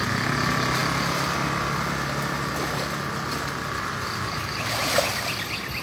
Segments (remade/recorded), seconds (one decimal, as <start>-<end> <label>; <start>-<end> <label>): 0.0-5.8 recorded